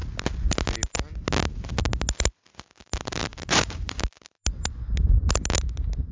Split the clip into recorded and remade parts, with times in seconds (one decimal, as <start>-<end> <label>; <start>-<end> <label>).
0.0-3.3 recorded; 3.3-4.1 remade; 4.1-6.1 recorded